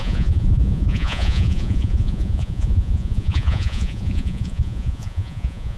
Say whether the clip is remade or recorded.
remade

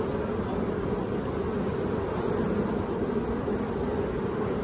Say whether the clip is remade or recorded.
recorded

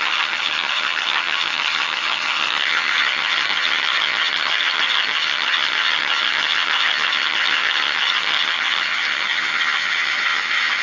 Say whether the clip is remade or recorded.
remade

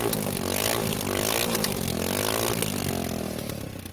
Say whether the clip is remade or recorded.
recorded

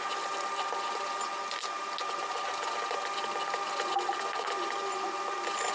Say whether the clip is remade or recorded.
recorded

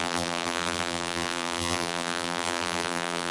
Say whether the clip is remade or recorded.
remade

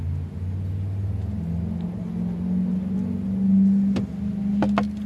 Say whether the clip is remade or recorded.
recorded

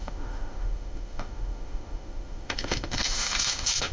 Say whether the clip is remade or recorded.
remade